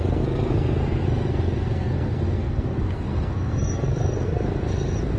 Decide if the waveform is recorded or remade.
remade